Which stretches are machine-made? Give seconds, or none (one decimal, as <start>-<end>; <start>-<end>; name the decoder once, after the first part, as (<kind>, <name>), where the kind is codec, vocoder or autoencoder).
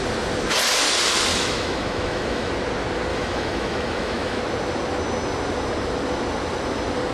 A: 1.3-2.5 (autoencoder, DAC-VAE); 3.1-4.4